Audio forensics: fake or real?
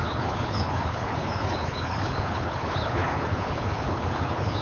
fake